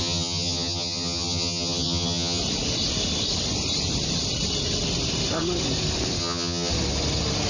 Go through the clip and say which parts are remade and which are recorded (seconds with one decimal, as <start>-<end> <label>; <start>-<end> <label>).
0.0-2.4 remade; 2.4-6.2 recorded; 6.2-6.7 remade; 6.7-7.5 recorded

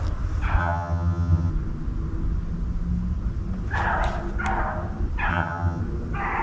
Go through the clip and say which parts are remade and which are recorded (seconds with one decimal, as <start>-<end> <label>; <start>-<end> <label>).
0.0-0.6 recorded; 0.6-1.5 remade; 1.5-5.3 recorded; 5.3-5.8 remade; 5.8-6.4 recorded